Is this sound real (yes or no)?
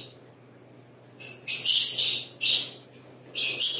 yes